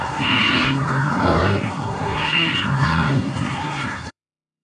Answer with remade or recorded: remade